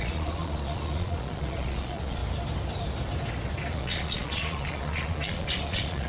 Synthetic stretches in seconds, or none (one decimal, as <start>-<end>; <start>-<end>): 0.0-2.2; 3.7-6.1